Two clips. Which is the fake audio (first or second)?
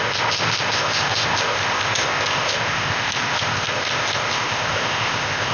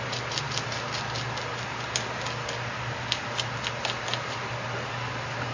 first